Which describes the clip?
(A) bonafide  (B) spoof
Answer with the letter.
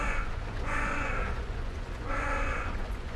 B